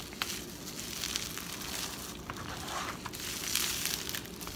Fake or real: real